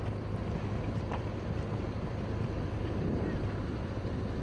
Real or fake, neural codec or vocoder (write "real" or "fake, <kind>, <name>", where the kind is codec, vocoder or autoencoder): fake, vocoder, BigVGAN v2